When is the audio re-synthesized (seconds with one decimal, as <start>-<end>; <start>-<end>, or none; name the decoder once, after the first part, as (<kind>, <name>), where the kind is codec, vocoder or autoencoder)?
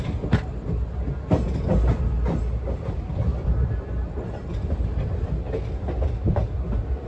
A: none